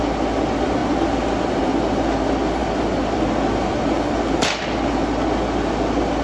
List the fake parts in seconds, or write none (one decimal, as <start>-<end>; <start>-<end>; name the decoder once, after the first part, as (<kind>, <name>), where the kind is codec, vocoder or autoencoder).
none